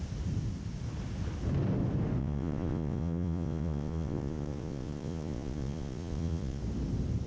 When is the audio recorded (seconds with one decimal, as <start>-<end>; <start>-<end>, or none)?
0.0-2.2; 6.6-7.3